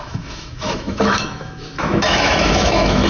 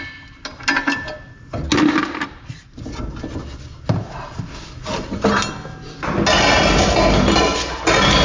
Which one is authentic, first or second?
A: second